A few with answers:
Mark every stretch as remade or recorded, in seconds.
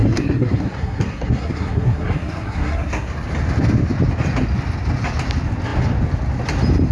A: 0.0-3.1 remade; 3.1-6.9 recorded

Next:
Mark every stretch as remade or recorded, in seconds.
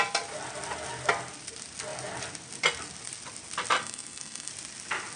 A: 0.0-3.8 recorded; 3.8-4.5 remade; 4.5-5.2 recorded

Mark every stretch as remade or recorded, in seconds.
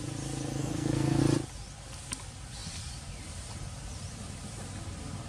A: 0.0-0.6 recorded; 0.6-1.2 remade; 1.2-5.3 recorded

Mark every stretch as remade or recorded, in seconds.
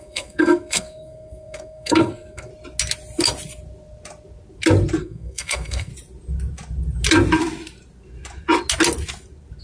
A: 0.0-2.5 remade; 2.5-5.0 recorded; 5.0-5.9 remade; 5.9-9.6 recorded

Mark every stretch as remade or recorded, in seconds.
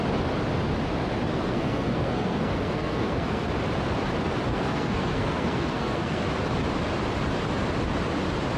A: 0.0-1.3 recorded; 1.3-3.5 remade; 3.5-4.5 recorded; 4.5-6.3 remade; 6.3-8.6 recorded